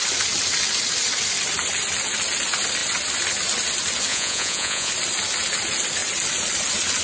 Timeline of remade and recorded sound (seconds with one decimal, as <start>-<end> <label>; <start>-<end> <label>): 0.0-4.1 recorded; 4.1-4.9 remade; 4.9-7.0 recorded